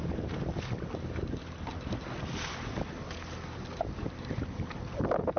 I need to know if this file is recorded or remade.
recorded